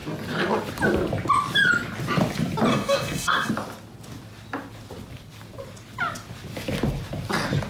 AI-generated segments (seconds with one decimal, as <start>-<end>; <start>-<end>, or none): 2.7-3.5

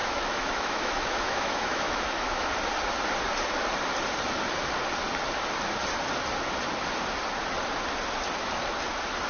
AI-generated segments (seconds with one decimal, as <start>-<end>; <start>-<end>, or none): 0.0-2.5